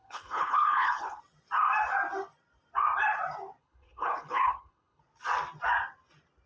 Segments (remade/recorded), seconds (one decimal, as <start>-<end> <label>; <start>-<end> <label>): 0.0-1.2 remade; 1.2-3.6 recorded; 3.6-5.0 remade; 5.0-6.5 recorded